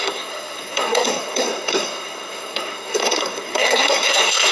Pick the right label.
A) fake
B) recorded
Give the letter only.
A